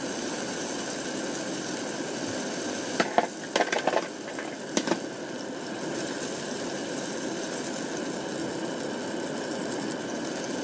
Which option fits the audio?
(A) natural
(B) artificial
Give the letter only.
A